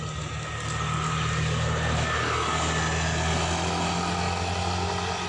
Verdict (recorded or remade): recorded